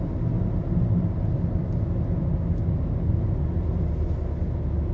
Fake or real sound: real